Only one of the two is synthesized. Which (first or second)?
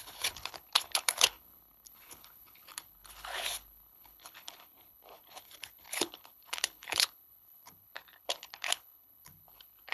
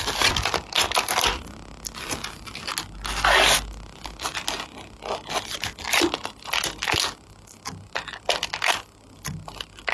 first